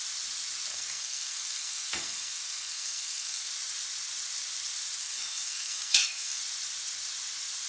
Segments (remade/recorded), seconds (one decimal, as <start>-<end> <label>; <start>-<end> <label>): 0.0-0.7 recorded; 0.7-3.5 remade; 3.5-5.0 recorded; 5.0-6.4 remade; 6.4-7.7 recorded